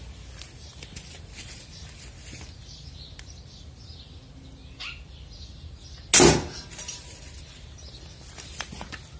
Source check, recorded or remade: recorded